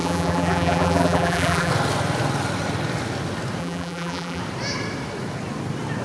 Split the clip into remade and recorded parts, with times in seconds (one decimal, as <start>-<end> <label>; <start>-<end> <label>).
0.0-1.7 remade; 1.7-3.6 recorded; 3.6-4.4 remade; 4.4-6.0 recorded